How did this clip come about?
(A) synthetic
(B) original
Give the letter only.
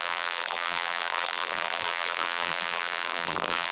A